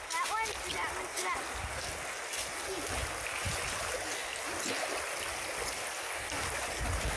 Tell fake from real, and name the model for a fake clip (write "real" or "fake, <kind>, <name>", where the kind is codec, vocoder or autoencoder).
real